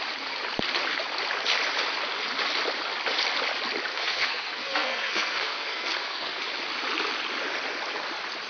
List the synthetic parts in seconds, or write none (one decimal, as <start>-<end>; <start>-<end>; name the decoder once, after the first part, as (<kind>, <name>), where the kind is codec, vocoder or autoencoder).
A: 3.9-6.4 (codec, SNAC)